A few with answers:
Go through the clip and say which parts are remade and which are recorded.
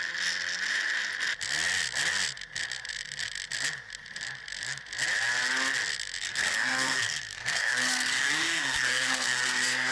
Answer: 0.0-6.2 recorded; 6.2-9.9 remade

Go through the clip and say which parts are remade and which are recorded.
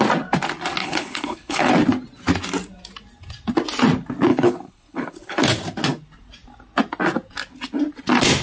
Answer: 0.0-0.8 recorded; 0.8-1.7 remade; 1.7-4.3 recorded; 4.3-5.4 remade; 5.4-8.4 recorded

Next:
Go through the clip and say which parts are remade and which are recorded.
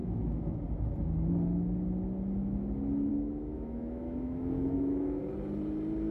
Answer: 0.0-0.6 remade; 0.6-3.1 recorded; 3.1-5.2 remade; 5.2-6.1 recorded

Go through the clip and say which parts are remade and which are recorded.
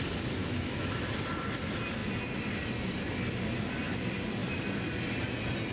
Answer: 0.0-0.4 recorded; 0.4-1.0 remade; 1.0-5.7 recorded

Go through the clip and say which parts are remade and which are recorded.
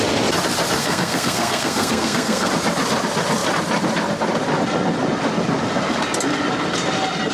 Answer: 0.0-0.8 recorded; 0.8-2.5 remade; 2.5-7.3 recorded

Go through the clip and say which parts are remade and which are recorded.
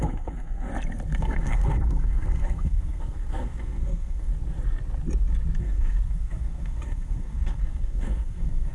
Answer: 0.0-0.7 remade; 0.7-1.2 recorded; 1.2-4.3 remade; 4.3-5.6 recorded; 5.6-8.7 remade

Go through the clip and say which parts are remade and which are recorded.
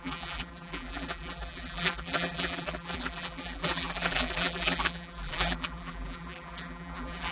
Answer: 0.0-7.3 remade